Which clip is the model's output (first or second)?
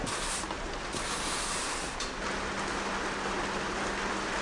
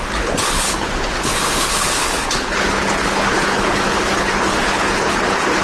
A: second